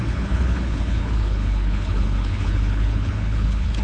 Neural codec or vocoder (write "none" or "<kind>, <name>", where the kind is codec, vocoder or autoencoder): codec, HILCodec